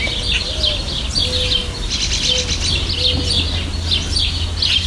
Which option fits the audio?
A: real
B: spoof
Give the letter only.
A